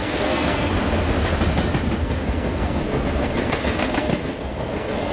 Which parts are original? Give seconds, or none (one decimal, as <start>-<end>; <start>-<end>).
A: 0.7-2.0